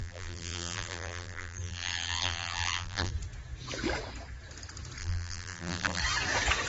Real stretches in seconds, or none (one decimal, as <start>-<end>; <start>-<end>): 3.1-5.0; 6.0-6.7